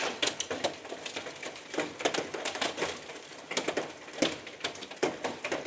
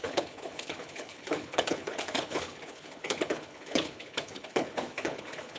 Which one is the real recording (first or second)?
first